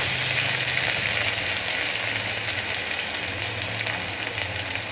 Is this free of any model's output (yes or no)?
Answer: yes